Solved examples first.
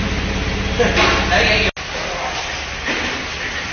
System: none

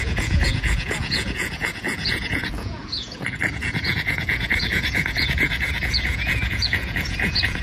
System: vocoder, Vocos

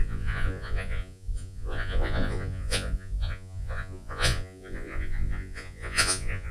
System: vocoder, Vocos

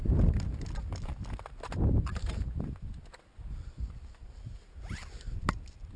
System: none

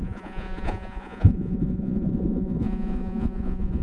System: vocoder, Vocos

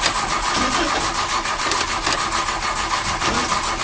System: none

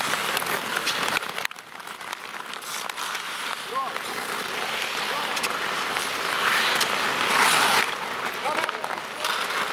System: none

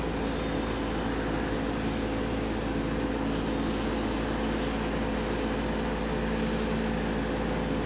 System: none